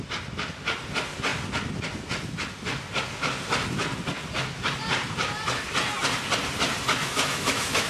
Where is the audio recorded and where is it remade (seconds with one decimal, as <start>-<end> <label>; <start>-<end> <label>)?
0.0-7.0 recorded; 7.0-7.9 remade